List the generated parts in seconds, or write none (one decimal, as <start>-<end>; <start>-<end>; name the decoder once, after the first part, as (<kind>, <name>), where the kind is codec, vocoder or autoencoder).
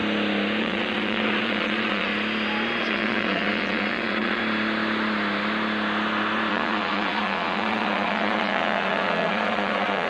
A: 0.6-2.1 (vocoder, Vocos); 2.8-4.4; 6.5-10.1